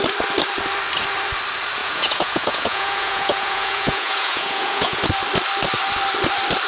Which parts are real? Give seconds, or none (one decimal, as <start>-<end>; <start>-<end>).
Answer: 0.0-1.8; 5.0-6.7